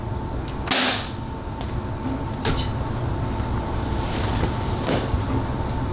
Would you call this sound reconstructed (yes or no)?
no